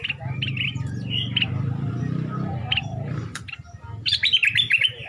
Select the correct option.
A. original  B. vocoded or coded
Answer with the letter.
B